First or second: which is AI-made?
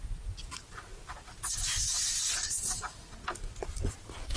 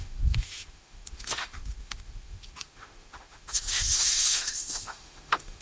second